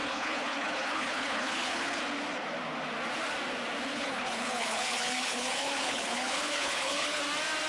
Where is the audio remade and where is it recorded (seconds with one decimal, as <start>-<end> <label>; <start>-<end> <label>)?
0.0-2.0 remade; 2.0-3.9 recorded; 3.9-7.2 remade; 7.2-7.7 recorded

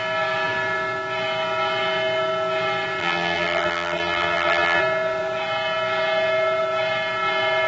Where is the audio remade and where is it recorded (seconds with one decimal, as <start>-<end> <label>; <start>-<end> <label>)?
0.0-3.0 recorded; 3.0-4.8 remade; 4.8-7.7 recorded

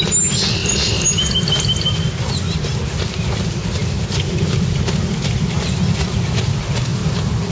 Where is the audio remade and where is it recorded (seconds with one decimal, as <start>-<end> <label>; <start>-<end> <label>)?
0.0-7.5 recorded

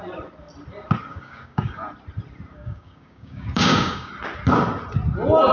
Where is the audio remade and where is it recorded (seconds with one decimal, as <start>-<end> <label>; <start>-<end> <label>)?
0.0-1.1 recorded; 1.1-1.8 remade; 1.8-2.5 recorded; 2.5-4.1 remade; 4.1-5.5 recorded

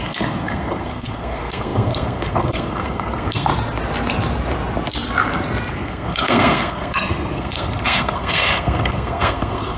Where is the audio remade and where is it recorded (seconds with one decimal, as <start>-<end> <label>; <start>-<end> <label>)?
0.0-3.5 remade; 3.5-5.7 recorded; 5.7-9.8 remade

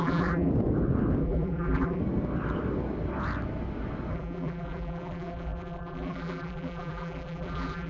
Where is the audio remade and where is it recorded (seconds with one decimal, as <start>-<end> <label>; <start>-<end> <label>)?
0.0-0.5 remade; 0.5-1.2 recorded; 1.2-2.0 remade; 2.0-4.1 recorded; 4.1-7.9 remade

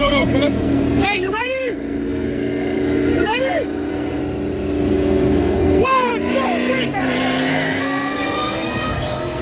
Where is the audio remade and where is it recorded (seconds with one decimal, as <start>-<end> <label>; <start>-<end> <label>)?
0.0-4.2 remade; 4.2-4.9 recorded; 4.9-6.1 remade; 6.1-7.5 recorded; 7.5-9.4 remade